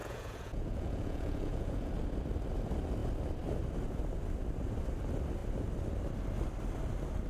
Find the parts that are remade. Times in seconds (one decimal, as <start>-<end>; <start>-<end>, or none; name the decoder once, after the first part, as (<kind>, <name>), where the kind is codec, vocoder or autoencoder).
0.0-1.9 (vocoder, Vocos)